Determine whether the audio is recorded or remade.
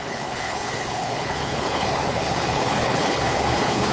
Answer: remade